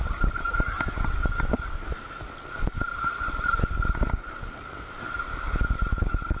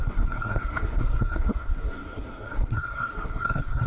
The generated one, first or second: second